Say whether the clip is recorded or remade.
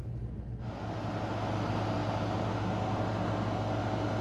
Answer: recorded